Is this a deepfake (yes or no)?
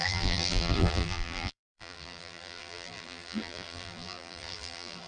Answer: yes